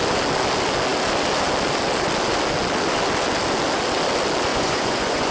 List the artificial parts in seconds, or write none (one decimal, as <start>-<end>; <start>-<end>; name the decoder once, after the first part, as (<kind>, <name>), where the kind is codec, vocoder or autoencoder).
4.5-5.3 (vocoder, Vocos)